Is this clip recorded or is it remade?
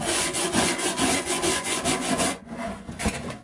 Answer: remade